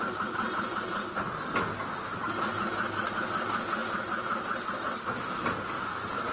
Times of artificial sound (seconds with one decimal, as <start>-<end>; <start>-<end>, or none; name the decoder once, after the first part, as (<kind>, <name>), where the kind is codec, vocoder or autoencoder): none